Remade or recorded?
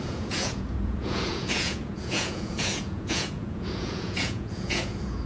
remade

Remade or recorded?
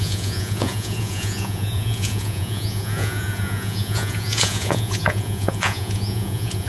remade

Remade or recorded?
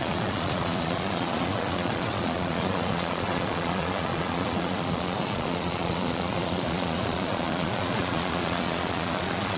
remade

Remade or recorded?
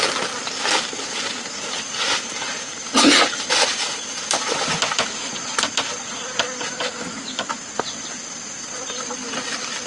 recorded